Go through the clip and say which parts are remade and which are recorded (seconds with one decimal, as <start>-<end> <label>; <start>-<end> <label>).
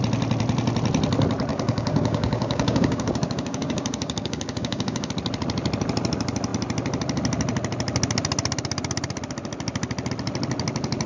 0.0-1.5 recorded; 1.5-5.1 remade; 5.1-11.1 recorded